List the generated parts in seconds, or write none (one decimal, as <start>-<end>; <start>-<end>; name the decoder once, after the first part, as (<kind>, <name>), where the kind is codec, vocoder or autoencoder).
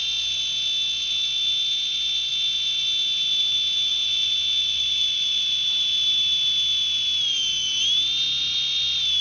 3.9-6.1 (vocoder, BigVGAN v2)